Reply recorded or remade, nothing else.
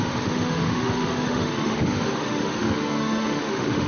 remade